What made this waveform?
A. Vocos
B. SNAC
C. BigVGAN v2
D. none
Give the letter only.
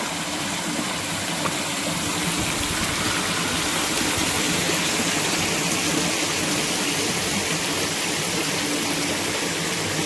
D